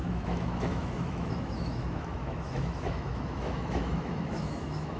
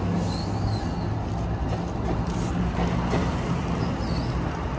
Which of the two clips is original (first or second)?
second